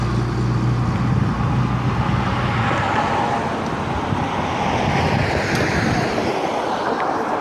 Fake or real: real